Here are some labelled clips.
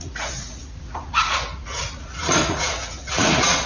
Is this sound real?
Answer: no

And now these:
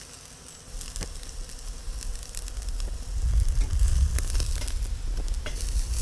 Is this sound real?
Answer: yes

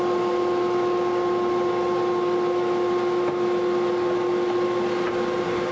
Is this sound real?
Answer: yes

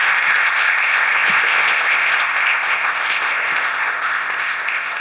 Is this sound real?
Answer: no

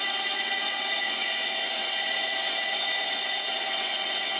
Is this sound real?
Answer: no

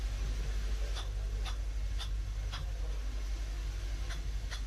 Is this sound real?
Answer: yes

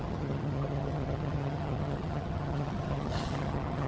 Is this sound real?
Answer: no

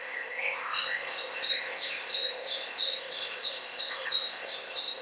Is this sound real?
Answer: no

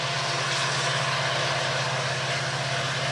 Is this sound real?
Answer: yes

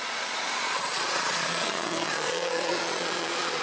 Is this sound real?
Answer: no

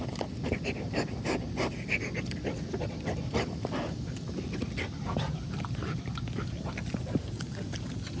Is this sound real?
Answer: yes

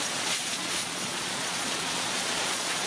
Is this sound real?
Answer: no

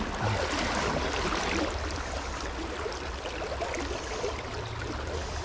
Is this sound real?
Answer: yes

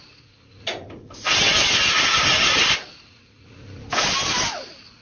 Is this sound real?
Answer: yes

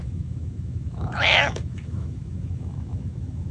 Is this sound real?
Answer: no